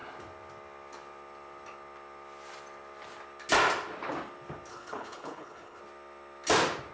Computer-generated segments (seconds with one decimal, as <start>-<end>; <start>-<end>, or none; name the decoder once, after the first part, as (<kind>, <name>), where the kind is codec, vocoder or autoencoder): 4.7-5.8 (codec, HILCodec)